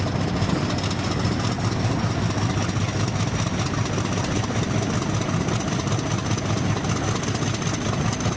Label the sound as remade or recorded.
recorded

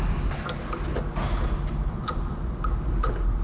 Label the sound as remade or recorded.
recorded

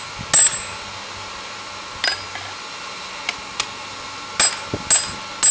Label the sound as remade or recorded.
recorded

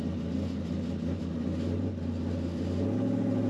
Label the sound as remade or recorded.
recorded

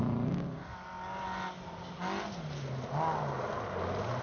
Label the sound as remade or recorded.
recorded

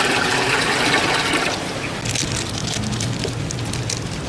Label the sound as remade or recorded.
recorded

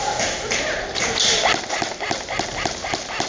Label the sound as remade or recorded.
recorded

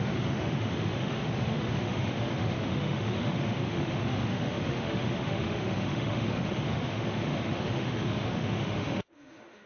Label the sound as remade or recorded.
remade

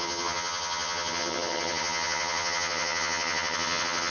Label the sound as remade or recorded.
remade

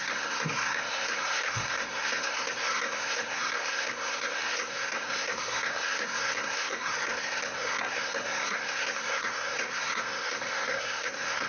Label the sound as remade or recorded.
remade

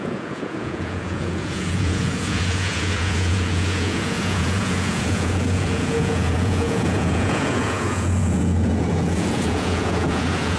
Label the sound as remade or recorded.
remade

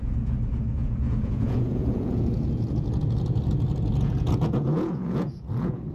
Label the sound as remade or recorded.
remade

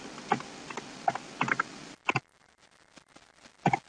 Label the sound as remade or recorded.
recorded